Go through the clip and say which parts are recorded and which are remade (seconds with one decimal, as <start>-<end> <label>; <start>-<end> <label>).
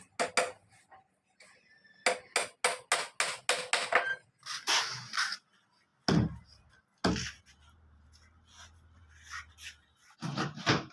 0.0-10.9 recorded